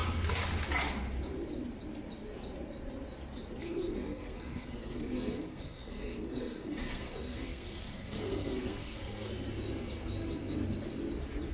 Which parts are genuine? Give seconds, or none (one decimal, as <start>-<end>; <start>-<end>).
0.0-3.6; 9.3-11.5